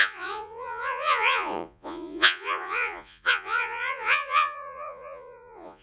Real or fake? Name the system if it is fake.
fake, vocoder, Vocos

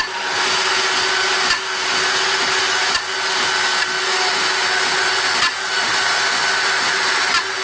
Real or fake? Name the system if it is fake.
real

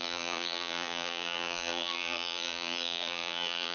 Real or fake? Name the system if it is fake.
fake, vocoder, BigVGAN v2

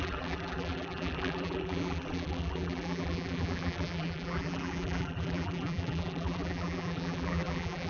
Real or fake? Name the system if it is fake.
fake, vocoder, BigVGAN v2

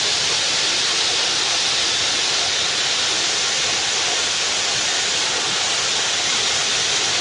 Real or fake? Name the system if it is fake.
real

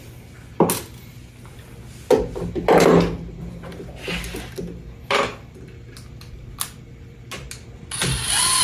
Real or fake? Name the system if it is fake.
real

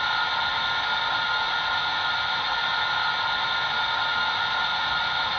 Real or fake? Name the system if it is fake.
real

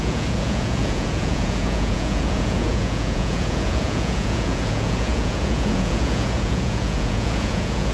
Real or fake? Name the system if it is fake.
fake, vocoder, Vocos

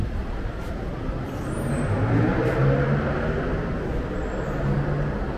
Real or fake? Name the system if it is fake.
real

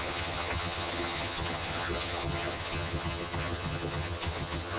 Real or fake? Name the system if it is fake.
fake, vocoder, HiFi-GAN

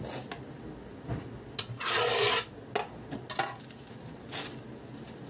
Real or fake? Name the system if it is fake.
real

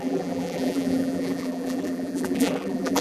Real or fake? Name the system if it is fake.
fake, vocoder, BigVGAN v2